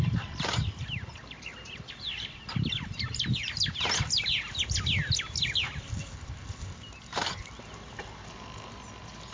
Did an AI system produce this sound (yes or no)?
no